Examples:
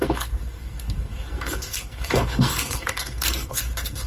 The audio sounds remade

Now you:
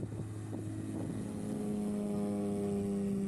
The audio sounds recorded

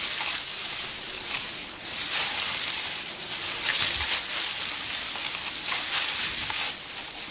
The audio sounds recorded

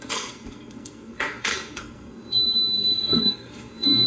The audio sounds remade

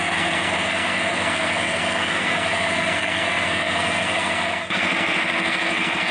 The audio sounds remade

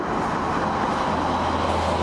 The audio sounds recorded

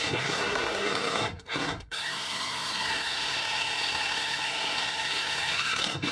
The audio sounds remade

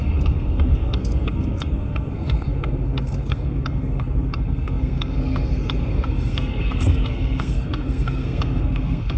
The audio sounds remade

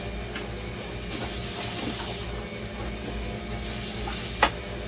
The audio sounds recorded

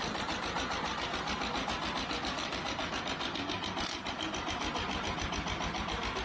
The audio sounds recorded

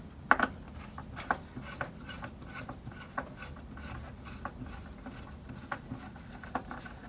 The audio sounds recorded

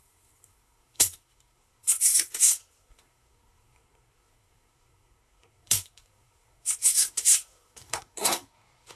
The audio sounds remade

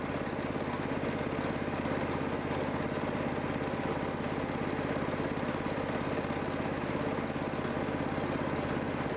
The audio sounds recorded